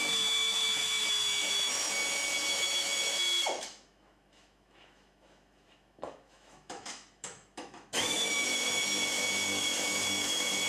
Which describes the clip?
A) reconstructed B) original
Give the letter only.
A